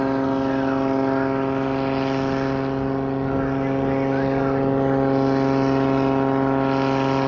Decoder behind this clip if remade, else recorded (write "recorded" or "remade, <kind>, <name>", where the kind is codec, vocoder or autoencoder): recorded